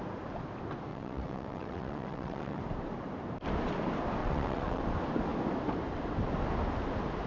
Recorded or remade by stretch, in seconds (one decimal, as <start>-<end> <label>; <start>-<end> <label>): 0.0-0.9 recorded; 0.9-2.6 remade; 2.6-4.2 recorded; 4.2-4.8 remade; 4.8-7.3 recorded